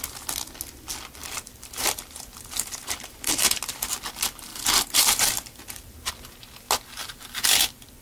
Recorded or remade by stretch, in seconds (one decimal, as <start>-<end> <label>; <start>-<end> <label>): 0.0-1.2 recorded; 1.2-3.6 remade; 3.6-4.5 recorded; 4.5-6.1 remade; 6.1-7.0 recorded; 7.0-8.0 remade